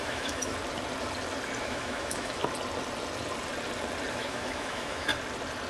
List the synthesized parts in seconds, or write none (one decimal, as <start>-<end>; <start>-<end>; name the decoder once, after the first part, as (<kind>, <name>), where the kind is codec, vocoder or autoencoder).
0.0-0.5 (autoencoder, DAC-VAE); 1.6-2.4; 4.1-5.1